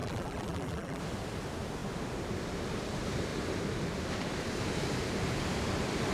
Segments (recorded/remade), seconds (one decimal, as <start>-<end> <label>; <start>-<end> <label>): 0.0-1.0 remade; 1.0-6.1 recorded

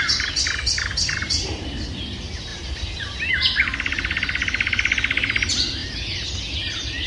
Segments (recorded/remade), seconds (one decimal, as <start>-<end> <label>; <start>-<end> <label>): 0.0-5.8 recorded; 5.8-6.4 remade; 6.4-7.1 recorded

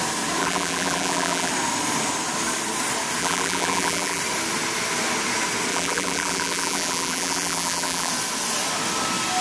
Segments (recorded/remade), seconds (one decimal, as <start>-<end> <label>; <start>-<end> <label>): 0.0-0.4 recorded; 0.4-1.5 remade; 1.5-3.2 recorded; 3.2-4.2 remade; 4.2-5.7 recorded; 5.7-8.1 remade; 8.1-9.4 recorded

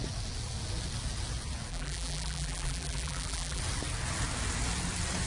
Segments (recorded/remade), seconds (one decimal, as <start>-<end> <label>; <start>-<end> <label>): 0.0-1.7 recorded; 1.7-3.6 remade; 3.6-5.3 recorded

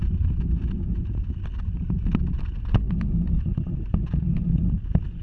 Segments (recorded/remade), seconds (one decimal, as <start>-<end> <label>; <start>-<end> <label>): 0.0-5.2 recorded

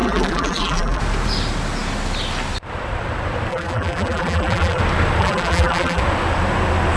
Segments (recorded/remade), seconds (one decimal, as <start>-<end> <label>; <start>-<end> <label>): 0.0-1.0 remade; 1.0-3.5 recorded; 3.5-4.8 remade; 4.8-5.2 recorded; 5.2-6.0 remade; 6.0-7.0 recorded

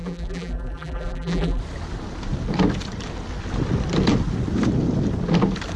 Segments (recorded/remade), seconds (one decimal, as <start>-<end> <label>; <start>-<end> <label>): 0.0-1.6 remade; 1.6-5.8 recorded

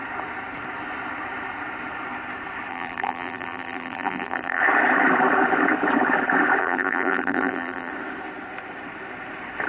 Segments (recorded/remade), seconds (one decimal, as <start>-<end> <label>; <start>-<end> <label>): 0.0-2.7 recorded; 2.7-4.6 remade; 4.6-6.6 recorded; 6.6-7.9 remade; 7.9-9.7 recorded